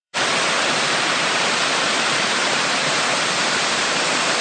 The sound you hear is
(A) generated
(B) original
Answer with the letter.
A